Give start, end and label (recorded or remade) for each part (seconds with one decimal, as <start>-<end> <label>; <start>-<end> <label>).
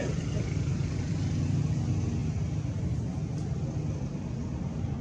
0.0-0.7 recorded; 0.7-1.6 remade; 1.6-5.0 recorded